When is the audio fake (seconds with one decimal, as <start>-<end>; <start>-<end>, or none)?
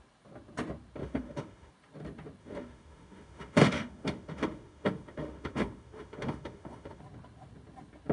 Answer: 1.0-1.7; 2.4-7.0